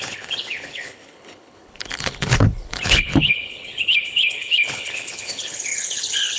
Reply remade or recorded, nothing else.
remade